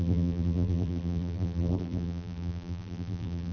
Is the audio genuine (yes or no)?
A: no